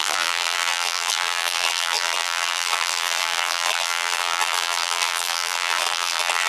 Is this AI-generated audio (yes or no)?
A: yes